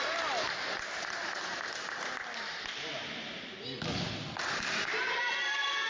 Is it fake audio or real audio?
real